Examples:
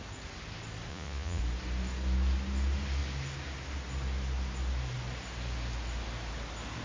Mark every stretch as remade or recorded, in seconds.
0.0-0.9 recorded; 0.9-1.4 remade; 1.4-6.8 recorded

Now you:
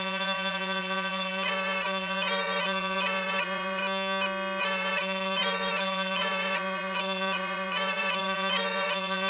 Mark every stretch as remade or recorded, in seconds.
0.0-3.8 remade; 3.8-4.6 recorded; 4.6-9.3 remade

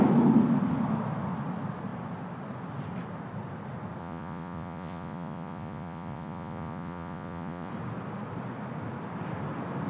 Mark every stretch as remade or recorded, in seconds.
0.0-4.0 recorded; 4.0-7.7 remade; 7.7-9.9 recorded

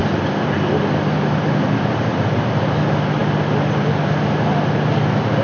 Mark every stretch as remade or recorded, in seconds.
0.0-5.4 recorded

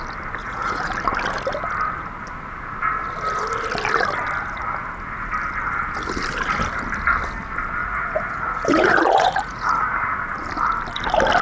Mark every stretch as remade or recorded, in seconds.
0.0-0.4 recorded; 0.4-0.9 remade; 0.9-7.8 recorded; 7.8-9.8 remade; 9.8-11.4 recorded

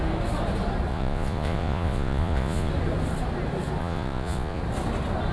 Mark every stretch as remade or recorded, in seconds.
0.0-0.9 recorded; 0.9-2.7 remade; 2.7-3.8 recorded; 3.8-4.6 remade; 4.6-5.3 recorded

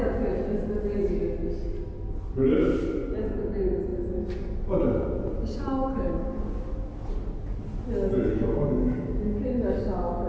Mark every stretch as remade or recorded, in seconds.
0.0-10.3 recorded

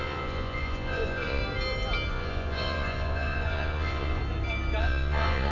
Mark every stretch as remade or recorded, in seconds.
0.0-1.4 remade; 1.4-2.1 recorded; 2.1-4.2 remade; 4.2-4.8 recorded; 4.8-5.5 remade